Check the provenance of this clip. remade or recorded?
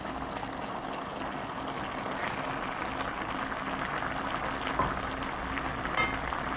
recorded